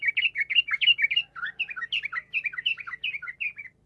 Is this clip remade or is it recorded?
recorded